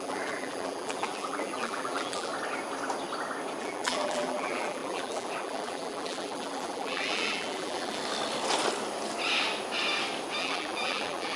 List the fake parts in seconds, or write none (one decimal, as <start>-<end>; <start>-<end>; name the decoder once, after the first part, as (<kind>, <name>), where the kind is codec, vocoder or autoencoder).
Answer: 0.0-2.3 (vocoder, BigVGAN v2); 3.6-8.0; 10.4-11.4